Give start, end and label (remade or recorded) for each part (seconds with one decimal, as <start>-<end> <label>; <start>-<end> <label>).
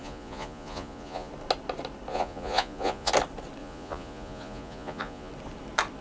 0.0-1.3 remade; 1.3-2.1 recorded; 2.1-3.1 remade; 3.1-3.6 recorded; 3.6-5.3 remade; 5.3-6.0 recorded